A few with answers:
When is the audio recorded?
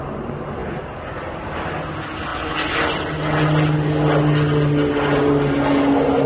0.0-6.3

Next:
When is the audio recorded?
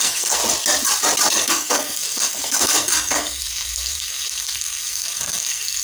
0.4-1.3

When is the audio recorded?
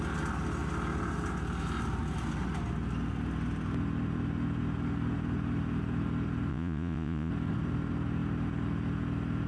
0.0-6.5; 7.3-9.5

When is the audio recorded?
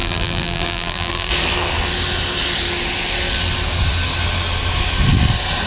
1.3-5.7